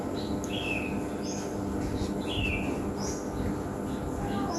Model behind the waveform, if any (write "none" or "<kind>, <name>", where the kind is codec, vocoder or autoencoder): none